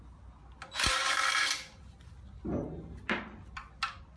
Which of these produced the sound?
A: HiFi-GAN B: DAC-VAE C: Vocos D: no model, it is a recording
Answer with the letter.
D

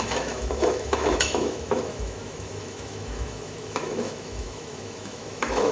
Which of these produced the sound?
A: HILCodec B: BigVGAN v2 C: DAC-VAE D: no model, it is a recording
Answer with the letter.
C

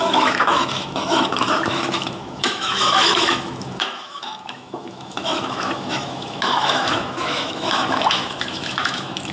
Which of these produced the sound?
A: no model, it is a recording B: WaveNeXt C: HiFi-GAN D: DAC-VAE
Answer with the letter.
D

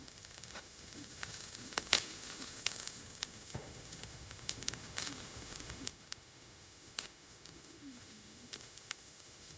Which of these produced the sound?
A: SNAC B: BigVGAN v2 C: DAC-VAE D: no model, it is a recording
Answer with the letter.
C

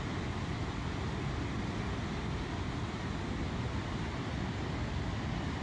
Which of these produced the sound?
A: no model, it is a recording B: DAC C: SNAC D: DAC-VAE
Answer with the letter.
A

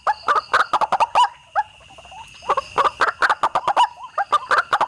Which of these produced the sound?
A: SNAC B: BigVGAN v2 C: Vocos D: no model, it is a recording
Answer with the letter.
D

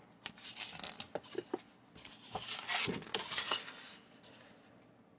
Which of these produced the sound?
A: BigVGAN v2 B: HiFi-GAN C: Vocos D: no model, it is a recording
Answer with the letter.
D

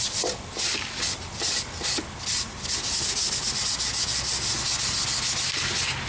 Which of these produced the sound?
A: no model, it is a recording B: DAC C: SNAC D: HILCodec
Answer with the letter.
A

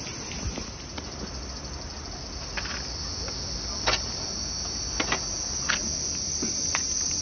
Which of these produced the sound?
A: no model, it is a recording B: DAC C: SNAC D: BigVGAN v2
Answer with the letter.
A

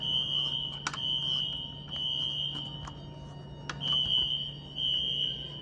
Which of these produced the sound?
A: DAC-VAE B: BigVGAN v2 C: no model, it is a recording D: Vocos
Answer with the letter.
C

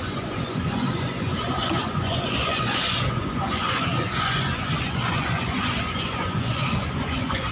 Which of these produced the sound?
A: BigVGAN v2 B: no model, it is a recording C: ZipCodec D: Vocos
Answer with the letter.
D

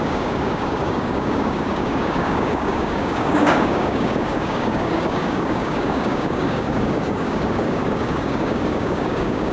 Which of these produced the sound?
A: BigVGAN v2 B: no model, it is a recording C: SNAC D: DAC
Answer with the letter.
D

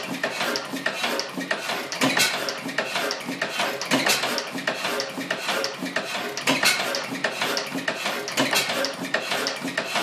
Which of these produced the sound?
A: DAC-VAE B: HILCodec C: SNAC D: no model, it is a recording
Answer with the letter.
D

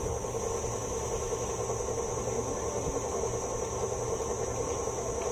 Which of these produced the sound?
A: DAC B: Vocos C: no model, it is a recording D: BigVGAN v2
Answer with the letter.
C